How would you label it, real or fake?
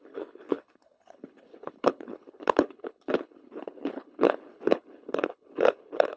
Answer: fake